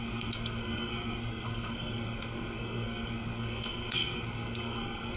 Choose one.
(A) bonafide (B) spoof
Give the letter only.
B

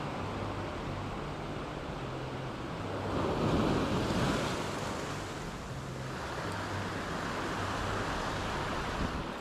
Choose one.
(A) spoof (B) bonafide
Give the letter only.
B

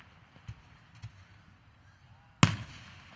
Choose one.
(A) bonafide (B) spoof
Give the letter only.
A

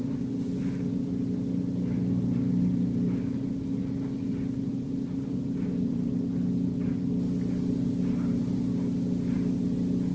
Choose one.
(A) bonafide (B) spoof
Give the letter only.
A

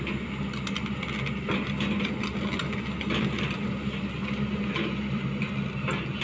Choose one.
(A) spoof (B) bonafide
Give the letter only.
B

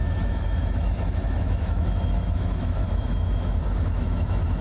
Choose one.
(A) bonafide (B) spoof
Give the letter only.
B